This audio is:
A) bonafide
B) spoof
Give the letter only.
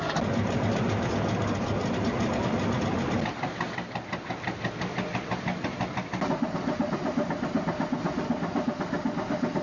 A